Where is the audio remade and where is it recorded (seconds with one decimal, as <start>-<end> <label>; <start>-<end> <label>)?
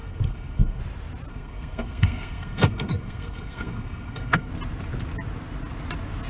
0.0-0.8 remade; 0.8-1.3 recorded; 1.3-4.5 remade; 4.5-6.3 recorded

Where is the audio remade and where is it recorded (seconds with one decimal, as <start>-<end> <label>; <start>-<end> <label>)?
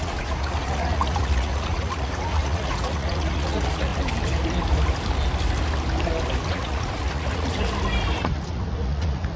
0.0-3.9 remade; 3.9-6.5 recorded; 6.5-7.6 remade; 7.6-8.2 recorded; 8.2-9.4 remade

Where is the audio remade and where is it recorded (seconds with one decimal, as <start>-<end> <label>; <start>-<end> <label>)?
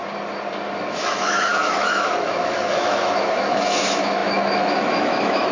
0.0-0.9 recorded; 0.9-5.5 remade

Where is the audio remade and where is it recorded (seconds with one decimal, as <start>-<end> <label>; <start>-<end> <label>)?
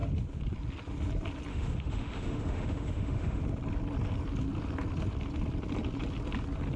0.0-1.5 recorded; 1.5-3.4 remade; 3.4-6.8 recorded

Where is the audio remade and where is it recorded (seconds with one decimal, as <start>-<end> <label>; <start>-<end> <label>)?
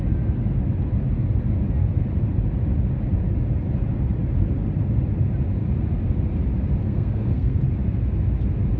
0.0-6.8 recorded; 6.8-7.7 remade; 7.7-8.8 recorded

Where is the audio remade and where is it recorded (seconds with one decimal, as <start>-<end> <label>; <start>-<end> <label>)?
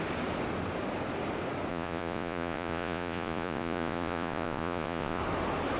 0.0-1.7 recorded; 1.7-5.2 remade; 5.2-5.8 recorded